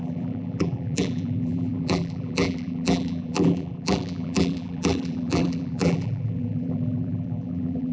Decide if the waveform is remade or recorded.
remade